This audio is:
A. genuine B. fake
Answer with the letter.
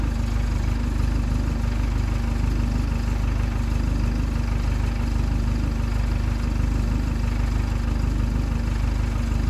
A